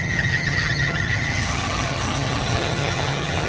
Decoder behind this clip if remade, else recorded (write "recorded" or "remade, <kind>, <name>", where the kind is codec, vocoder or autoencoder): remade, vocoder, HiFi-GAN